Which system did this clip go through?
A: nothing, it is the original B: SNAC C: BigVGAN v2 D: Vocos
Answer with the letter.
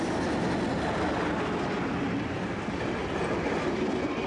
A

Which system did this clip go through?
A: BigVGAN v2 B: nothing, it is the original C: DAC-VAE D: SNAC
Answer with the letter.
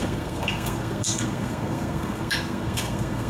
D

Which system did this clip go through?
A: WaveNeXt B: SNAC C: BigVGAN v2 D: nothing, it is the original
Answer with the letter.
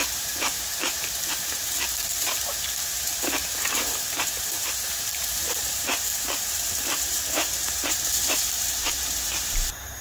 C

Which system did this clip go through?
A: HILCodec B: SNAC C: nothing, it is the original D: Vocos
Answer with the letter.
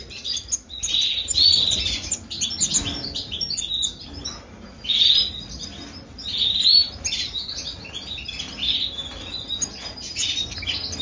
C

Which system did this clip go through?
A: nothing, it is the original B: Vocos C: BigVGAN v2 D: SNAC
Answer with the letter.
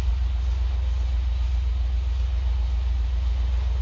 A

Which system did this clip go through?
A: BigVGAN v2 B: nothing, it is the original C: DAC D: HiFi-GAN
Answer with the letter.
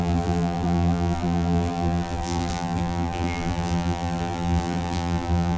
A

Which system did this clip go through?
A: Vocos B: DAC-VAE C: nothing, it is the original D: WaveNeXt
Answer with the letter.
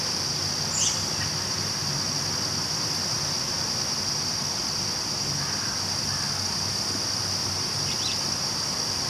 C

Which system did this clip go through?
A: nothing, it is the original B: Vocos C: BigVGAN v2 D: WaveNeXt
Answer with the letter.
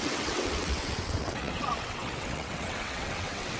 D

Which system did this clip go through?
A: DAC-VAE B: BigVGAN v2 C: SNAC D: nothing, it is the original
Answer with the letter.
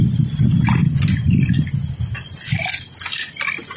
D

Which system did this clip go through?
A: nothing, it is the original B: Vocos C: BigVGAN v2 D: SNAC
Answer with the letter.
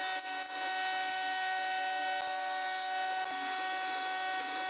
A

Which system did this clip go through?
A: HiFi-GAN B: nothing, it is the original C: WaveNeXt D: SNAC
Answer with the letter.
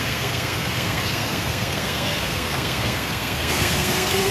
D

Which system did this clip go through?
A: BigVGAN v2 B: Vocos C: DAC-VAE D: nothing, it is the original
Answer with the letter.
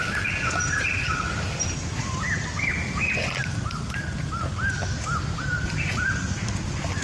D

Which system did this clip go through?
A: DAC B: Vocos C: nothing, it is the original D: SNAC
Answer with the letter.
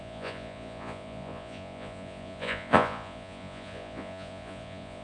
B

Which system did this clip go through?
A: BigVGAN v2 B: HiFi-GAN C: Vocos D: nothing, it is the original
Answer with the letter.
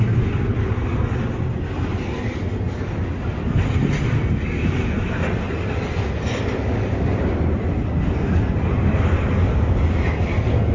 D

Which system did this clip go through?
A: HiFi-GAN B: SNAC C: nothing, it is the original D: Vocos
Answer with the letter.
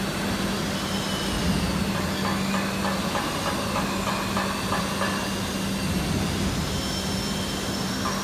C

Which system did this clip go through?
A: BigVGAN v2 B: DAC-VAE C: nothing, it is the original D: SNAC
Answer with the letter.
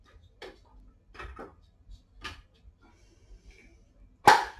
C